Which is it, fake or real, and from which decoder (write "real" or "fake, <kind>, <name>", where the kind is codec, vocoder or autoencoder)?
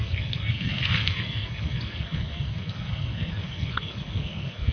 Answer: fake, codec, SNAC